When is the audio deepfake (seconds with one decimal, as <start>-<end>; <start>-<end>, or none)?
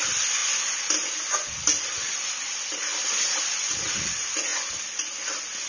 none